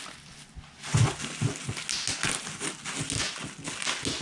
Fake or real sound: real